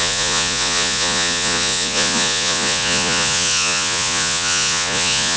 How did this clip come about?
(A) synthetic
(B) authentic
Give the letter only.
A